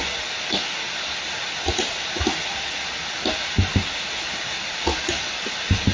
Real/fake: real